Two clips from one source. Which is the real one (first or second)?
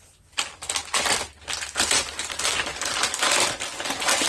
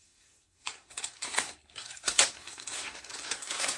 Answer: first